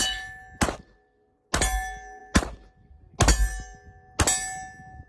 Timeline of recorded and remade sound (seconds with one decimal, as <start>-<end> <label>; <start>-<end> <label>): 0.0-5.1 recorded